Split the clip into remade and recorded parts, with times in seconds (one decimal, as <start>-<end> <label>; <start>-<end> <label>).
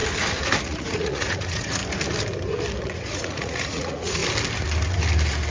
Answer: 0.0-0.6 recorded; 0.6-1.8 remade; 1.8-2.8 recorded; 2.8-4.2 remade; 4.2-5.5 recorded